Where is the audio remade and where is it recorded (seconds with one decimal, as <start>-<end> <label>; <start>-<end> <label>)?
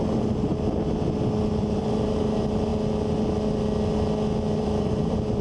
0.0-0.5 remade; 0.5-1.6 recorded; 1.6-2.7 remade; 2.7-4.6 recorded; 4.6-5.4 remade